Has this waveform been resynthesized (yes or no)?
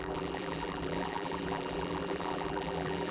yes